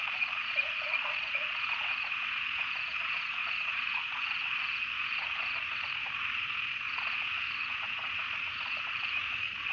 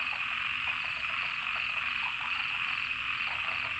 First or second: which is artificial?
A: first